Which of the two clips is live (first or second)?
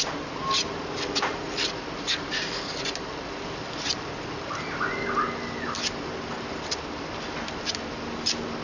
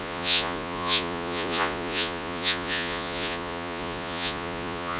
first